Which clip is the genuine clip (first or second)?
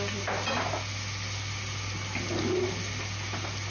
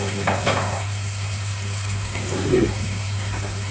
first